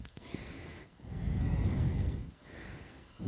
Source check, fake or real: fake